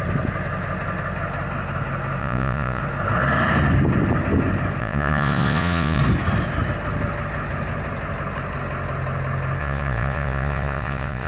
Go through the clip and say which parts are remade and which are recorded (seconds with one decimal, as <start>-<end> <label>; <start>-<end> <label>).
0.0-2.2 recorded; 2.2-2.8 remade; 2.8-4.8 recorded; 4.8-6.0 remade; 6.0-9.6 recorded; 9.6-11.3 remade